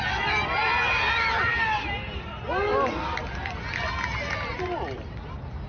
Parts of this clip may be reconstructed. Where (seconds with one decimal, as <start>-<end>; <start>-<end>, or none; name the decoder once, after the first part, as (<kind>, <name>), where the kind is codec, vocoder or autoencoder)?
0.0-1.5 (vocoder, BigVGAN v2); 4.6-5.7